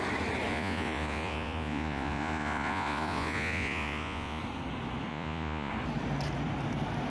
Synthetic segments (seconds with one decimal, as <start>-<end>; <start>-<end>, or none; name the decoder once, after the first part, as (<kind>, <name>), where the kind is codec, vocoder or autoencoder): 0.5-4.4 (vocoder, Vocos); 5.1-5.7

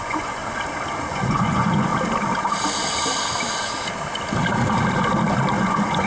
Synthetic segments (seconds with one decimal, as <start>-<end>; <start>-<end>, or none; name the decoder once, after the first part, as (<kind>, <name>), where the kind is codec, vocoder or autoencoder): 0.0-0.4 (vocoder, Vocos); 1.1-1.9; 5.6-6.1